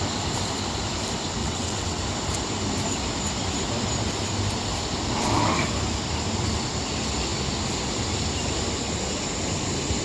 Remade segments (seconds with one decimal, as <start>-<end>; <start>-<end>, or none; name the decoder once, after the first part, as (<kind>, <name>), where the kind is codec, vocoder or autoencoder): 1.4-2.0 (vocoder, WaveNeXt)